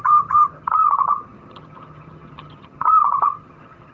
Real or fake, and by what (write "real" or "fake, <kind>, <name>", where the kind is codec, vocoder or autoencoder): fake, vocoder, HiFi-GAN